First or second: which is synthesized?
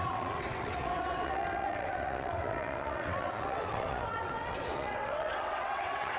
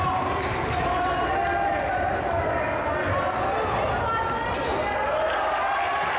first